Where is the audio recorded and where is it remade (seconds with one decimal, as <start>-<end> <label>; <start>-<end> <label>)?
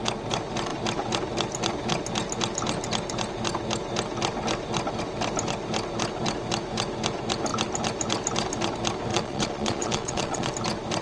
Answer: 0.0-9.1 recorded; 9.1-10.5 remade; 10.5-11.0 recorded